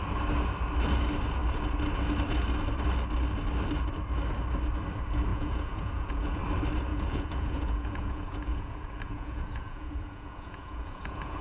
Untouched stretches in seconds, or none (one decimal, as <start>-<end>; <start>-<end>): 0.0-5.3; 6.4-6.9